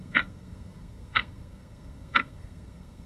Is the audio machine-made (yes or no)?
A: yes